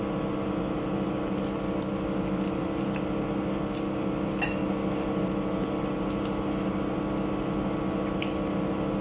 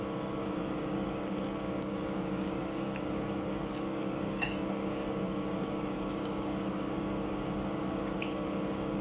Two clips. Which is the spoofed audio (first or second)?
second